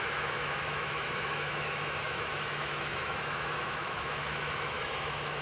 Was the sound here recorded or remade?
remade